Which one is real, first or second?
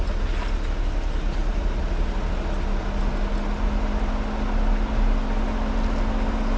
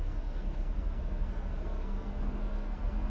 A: first